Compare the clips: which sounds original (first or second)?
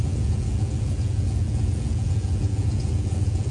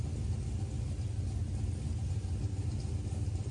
second